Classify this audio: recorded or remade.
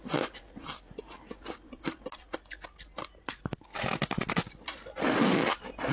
recorded